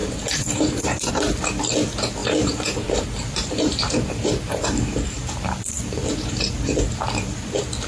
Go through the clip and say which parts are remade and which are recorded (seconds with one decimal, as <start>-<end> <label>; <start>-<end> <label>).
0.0-1.1 remade; 1.1-2.2 recorded; 2.2-6.5 remade; 6.5-7.9 recorded